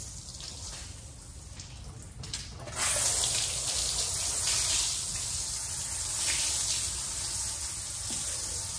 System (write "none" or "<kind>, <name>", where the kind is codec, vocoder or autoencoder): none